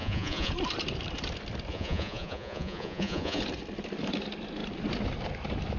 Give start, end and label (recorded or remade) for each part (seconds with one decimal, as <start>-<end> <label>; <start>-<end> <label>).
0.0-0.5 remade; 0.5-1.7 recorded; 1.7-3.4 remade; 3.4-5.8 recorded